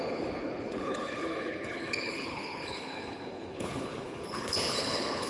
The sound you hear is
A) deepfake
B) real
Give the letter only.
A